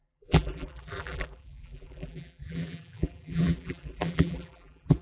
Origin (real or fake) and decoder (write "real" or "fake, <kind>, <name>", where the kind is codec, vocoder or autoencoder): fake, vocoder, BigVGAN v2